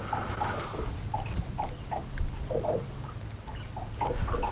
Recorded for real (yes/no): yes